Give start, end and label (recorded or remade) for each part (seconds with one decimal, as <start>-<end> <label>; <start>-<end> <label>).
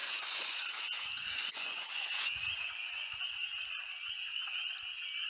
0.0-3.2 remade; 3.2-5.3 recorded